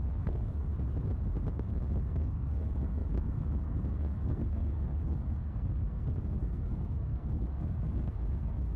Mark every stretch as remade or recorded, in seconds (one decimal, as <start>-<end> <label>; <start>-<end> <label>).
0.0-0.7 remade; 0.7-1.5 recorded; 1.5-8.8 remade